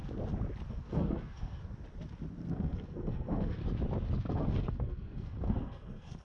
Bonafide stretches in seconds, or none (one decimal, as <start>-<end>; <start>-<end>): 0.0-0.7; 1.6-2.5; 3.6-4.3